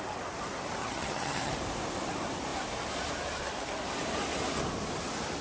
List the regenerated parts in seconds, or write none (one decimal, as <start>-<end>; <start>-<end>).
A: 0.8-1.5